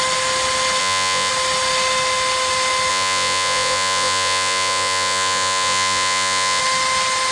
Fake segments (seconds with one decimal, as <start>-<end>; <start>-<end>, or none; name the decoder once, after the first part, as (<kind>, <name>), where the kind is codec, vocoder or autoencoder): 0.8-1.3 (vocoder, Vocos); 2.9-6.6